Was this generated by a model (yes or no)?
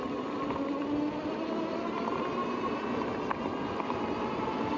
no